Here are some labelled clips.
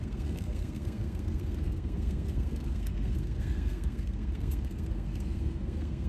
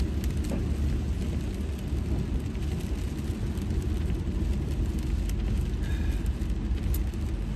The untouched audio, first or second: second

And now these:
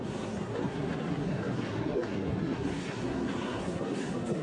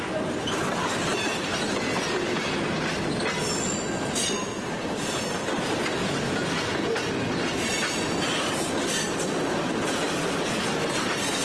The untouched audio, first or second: second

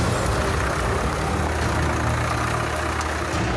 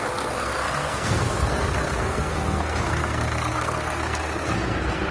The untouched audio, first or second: first